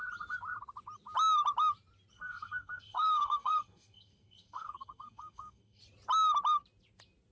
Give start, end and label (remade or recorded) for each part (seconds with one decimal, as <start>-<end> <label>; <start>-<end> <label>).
0.0-2.1 recorded; 2.1-5.8 remade; 5.8-7.3 recorded